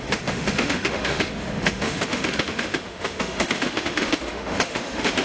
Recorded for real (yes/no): no